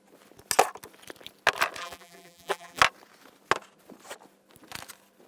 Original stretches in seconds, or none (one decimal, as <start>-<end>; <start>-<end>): 0.0-1.8; 2.8-5.3